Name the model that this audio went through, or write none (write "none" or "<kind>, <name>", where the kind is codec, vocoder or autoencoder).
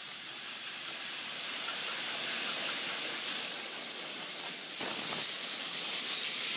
vocoder, BigVGAN v2